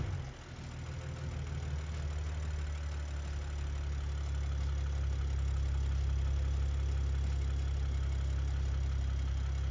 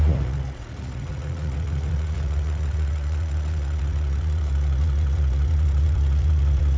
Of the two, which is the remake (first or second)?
second